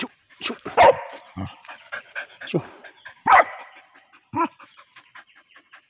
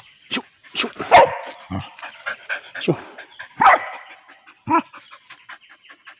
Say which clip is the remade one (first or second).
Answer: first